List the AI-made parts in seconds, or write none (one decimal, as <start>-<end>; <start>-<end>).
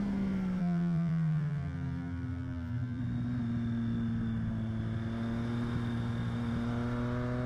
0.6-3.0